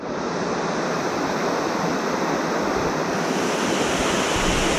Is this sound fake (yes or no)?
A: no